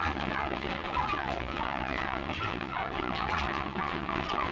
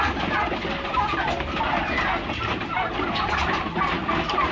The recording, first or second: second